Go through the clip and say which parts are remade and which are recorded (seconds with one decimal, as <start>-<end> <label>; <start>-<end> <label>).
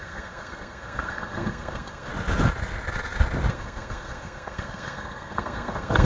0.0-2.1 remade; 2.1-3.5 recorded; 3.5-6.0 remade